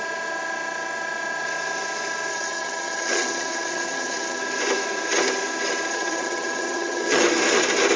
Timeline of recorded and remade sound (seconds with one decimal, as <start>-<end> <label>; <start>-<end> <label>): 0.0-2.3 recorded; 2.3-4.4 remade; 4.4-5.9 recorded; 5.9-7.2 remade; 7.2-8.0 recorded